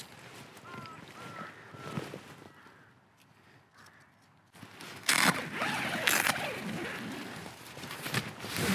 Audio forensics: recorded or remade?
recorded